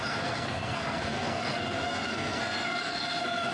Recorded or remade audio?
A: remade